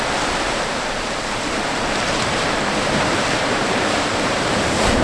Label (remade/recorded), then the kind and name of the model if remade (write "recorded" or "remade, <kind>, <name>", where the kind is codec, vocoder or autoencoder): remade, vocoder, BigVGAN v2